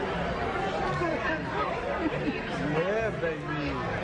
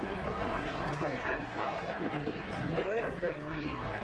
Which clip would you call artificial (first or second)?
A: second